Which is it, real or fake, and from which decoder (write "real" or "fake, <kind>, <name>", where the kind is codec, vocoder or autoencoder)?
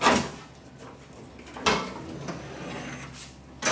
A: real